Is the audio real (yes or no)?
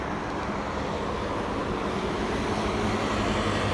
yes